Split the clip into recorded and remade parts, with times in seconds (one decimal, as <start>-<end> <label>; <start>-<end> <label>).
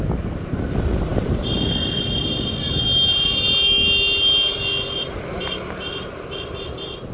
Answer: 0.0-7.1 recorded